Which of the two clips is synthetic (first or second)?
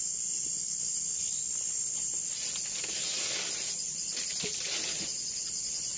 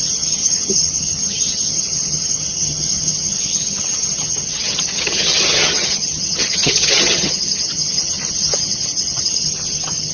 second